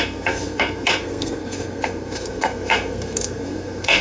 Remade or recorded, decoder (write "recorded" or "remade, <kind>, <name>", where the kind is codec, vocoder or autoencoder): remade, codec, SNAC